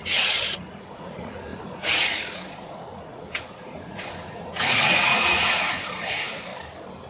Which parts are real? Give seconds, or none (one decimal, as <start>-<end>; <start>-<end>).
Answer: 6.5-7.1